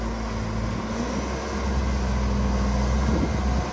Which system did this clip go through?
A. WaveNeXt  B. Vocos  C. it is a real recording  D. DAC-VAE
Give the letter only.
C